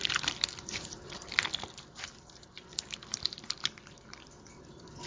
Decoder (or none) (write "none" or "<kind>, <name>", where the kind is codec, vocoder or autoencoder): vocoder, BigVGAN v2